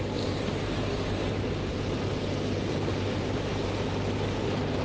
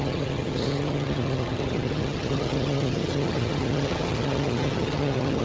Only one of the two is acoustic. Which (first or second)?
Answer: first